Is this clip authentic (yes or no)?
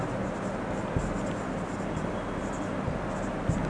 yes